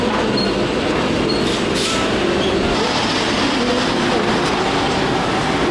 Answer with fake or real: real